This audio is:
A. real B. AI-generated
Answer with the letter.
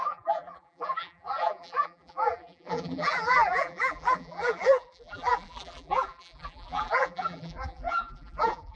B